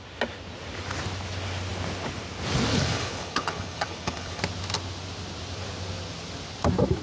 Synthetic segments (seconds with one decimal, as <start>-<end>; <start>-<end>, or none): 2.7-4.4